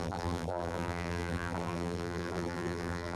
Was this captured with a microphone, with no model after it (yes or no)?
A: no